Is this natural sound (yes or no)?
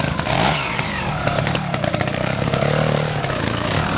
no